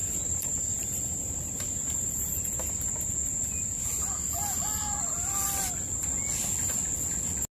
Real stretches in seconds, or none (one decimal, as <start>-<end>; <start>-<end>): 2.7-7.5